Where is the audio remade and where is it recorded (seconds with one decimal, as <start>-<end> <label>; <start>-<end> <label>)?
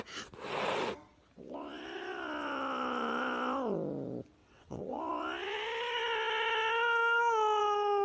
0.0-4.4 recorded; 4.4-5.0 remade; 5.0-8.0 recorded